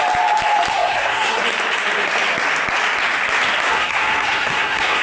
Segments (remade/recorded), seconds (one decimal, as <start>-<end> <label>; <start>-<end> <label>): 0.0-0.7 recorded; 0.7-1.4 remade; 1.4-3.7 recorded; 3.7-5.0 remade